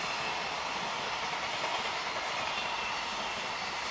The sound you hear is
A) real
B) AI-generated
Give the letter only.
A